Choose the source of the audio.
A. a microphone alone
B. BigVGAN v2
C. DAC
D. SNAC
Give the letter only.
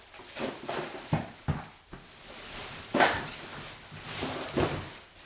A